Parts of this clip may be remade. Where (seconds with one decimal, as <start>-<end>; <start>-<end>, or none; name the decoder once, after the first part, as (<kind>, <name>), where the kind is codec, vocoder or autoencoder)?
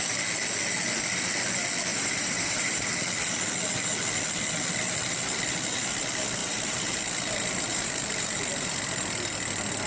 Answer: 1.9-2.9 (vocoder, BigVGAN v2); 6.4-7.0; 7.7-8.8